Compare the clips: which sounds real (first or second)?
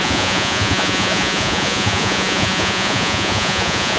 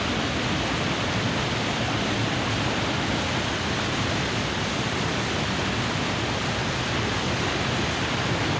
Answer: second